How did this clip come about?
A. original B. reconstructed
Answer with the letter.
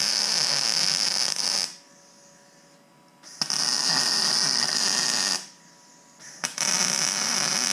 A